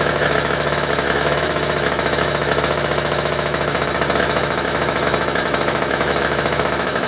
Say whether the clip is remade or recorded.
remade